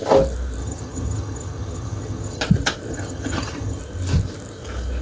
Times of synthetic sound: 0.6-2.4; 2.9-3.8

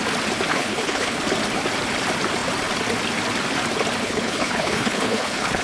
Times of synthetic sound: 0.5-1.2; 4.0-5.6

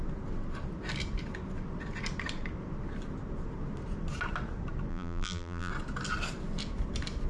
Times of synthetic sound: 4.9-5.7

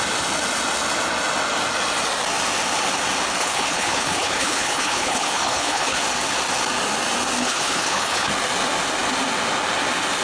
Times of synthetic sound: 3.4-6.0; 7.4-8.3